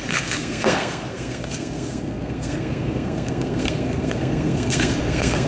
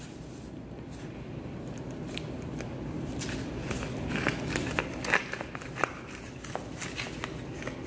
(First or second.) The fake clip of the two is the first